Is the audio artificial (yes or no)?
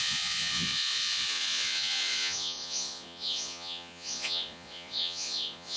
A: yes